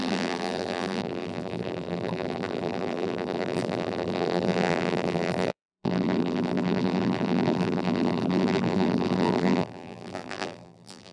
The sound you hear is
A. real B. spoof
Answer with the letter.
B